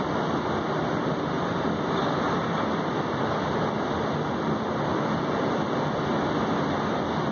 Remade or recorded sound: recorded